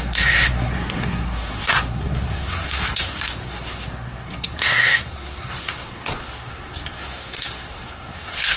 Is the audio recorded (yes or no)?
no